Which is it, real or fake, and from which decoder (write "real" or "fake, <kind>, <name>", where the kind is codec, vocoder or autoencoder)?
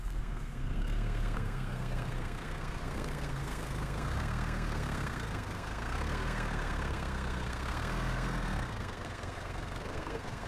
fake, codec, SNAC